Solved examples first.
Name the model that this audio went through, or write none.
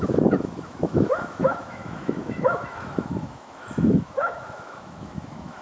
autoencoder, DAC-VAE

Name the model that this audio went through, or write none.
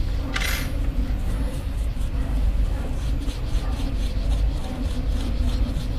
none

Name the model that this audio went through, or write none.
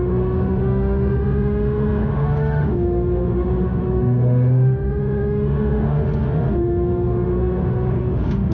autoencoder, DAC-VAE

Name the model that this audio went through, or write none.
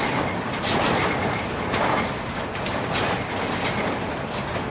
none